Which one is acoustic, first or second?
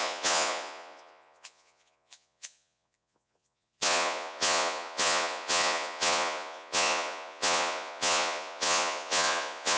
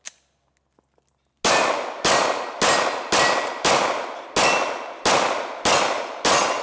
second